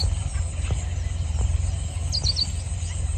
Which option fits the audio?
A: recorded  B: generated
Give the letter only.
A